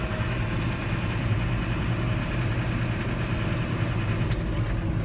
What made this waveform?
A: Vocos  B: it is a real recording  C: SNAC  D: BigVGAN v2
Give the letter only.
B